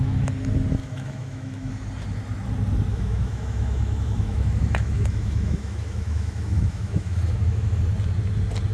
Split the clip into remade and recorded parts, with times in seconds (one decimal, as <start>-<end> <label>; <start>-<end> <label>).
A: 0.0-0.8 recorded; 0.8-1.7 remade; 1.7-2.9 recorded; 2.9-7.8 remade; 7.8-8.7 recorded